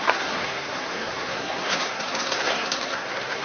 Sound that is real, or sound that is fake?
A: fake